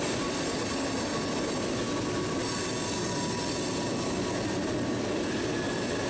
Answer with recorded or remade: recorded